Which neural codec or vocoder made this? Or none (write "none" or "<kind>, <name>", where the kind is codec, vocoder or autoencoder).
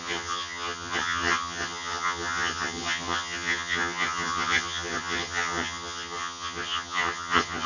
vocoder, HiFi-GAN